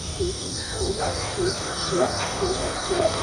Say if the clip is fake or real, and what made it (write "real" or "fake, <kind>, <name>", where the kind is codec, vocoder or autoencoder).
fake, codec, DAC